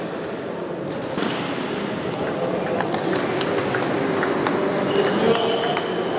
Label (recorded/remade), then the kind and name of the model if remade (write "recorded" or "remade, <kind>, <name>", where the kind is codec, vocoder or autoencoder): recorded